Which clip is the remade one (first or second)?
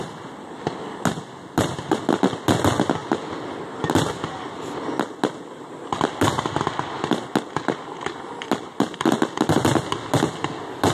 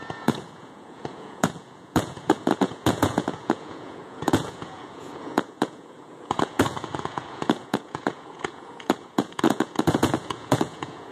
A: second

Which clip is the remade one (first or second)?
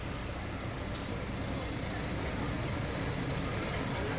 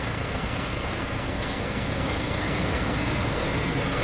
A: second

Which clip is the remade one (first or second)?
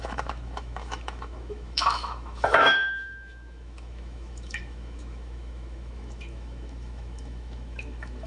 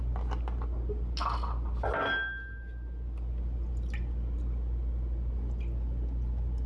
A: first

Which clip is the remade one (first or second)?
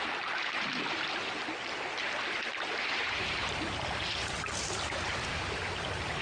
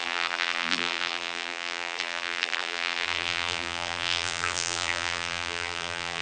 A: second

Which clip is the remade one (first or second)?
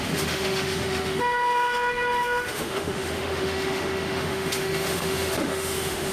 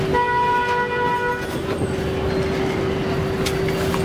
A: first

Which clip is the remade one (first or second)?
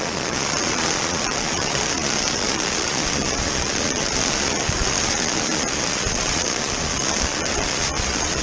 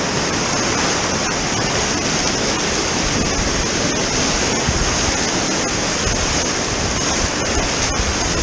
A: first